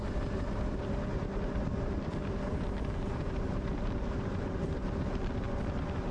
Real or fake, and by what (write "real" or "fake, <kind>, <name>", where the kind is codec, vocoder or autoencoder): fake, vocoder, BigVGAN v2